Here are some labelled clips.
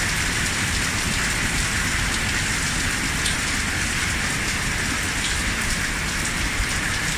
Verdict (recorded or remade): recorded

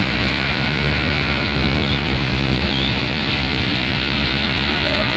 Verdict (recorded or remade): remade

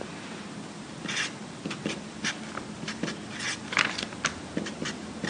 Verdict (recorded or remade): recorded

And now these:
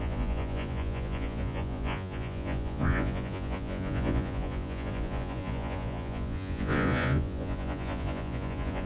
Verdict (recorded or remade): remade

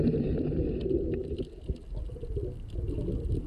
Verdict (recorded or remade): recorded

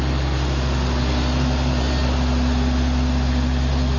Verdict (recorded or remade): recorded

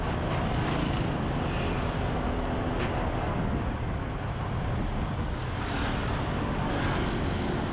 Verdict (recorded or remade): recorded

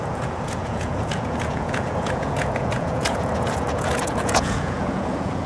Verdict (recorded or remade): remade